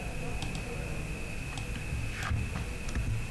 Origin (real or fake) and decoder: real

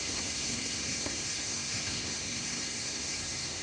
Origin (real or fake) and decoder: fake, codec, SNAC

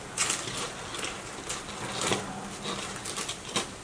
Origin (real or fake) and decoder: real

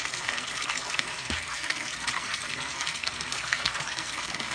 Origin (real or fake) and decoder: fake, codec, SNAC